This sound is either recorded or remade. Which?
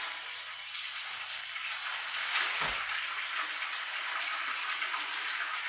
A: recorded